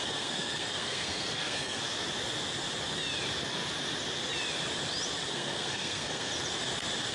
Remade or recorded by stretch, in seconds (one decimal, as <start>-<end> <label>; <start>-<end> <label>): 0.0-1.8 remade; 1.8-5.3 recorded; 5.3-6.3 remade; 6.3-7.1 recorded